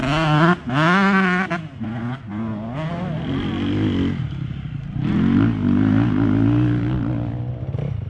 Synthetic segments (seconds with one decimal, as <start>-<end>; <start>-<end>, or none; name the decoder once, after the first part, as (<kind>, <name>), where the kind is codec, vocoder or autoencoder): none